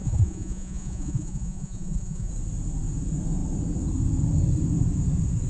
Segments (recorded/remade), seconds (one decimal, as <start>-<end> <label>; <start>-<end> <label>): 0.0-2.3 remade; 2.3-5.5 recorded